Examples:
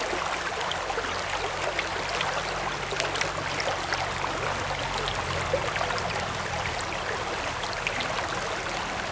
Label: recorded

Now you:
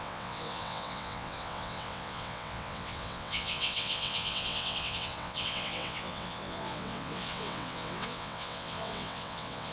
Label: remade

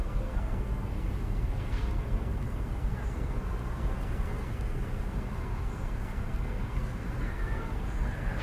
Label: remade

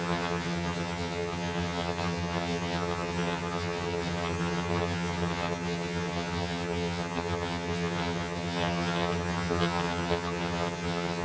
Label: remade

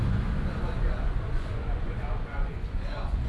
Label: remade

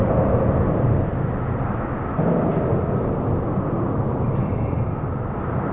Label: recorded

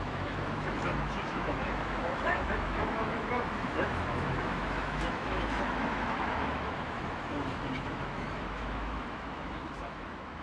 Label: remade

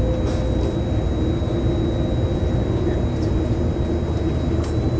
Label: recorded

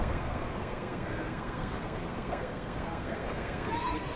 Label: remade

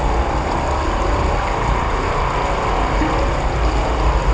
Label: recorded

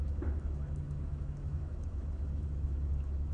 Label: remade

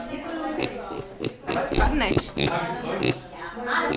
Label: recorded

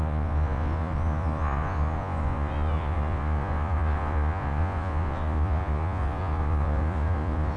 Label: remade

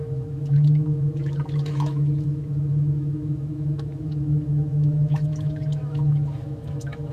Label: remade